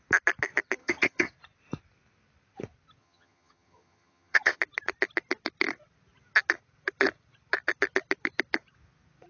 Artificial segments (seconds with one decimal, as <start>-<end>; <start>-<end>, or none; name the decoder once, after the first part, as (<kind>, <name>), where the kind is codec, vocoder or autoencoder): 0.8-1.3 (vocoder, HiFi-GAN); 3.0-4.6